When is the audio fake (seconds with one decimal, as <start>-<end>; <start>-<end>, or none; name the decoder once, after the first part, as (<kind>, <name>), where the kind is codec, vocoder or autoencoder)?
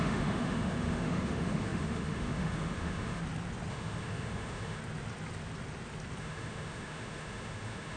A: 0.0-3.2 (autoencoder, DAC-VAE); 3.7-4.8; 6.2-8.0